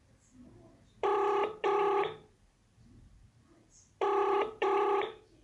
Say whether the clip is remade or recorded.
remade